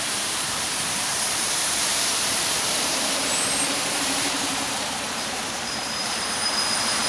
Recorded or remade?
remade